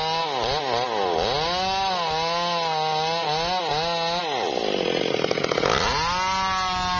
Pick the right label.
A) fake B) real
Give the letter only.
B